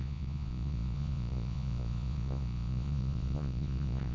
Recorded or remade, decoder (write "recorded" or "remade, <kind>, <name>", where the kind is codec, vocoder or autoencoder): remade, vocoder, Vocos